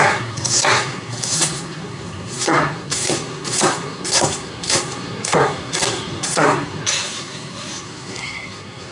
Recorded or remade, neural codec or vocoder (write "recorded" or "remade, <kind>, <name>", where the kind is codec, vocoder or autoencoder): remade, codec, SNAC